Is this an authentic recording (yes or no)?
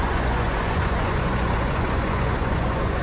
no